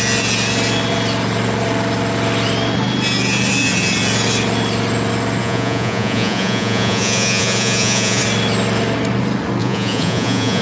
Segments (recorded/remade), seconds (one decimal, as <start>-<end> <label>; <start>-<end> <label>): 0.0-5.4 recorded; 5.4-8.2 remade; 8.2-9.6 recorded; 9.6-10.6 remade